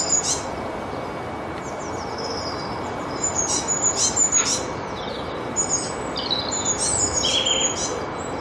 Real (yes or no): yes